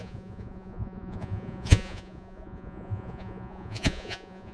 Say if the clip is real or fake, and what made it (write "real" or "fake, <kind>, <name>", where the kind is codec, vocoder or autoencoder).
fake, vocoder, Vocos